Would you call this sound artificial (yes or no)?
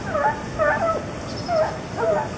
no